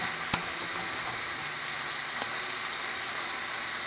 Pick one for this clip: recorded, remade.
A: recorded